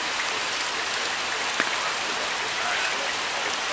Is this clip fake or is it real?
real